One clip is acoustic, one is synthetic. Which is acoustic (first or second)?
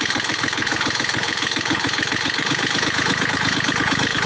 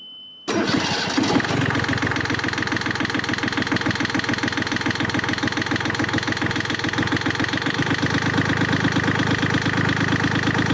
second